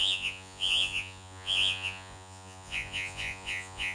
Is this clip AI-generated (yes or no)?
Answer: yes